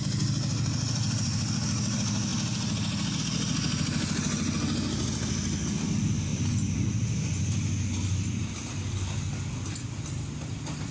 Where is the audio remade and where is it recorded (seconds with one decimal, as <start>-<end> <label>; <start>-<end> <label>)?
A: 0.0-10.9 recorded